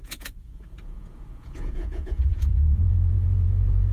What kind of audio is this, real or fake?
fake